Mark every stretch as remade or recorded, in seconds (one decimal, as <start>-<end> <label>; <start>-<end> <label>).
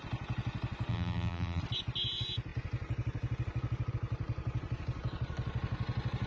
0.0-0.9 recorded; 0.9-1.6 remade; 1.6-6.3 recorded